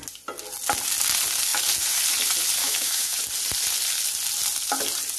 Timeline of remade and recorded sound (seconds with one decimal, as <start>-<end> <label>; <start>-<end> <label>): 0.0-2.6 recorded; 2.6-3.2 remade; 3.2-5.2 recorded